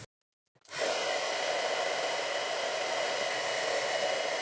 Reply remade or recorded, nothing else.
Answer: recorded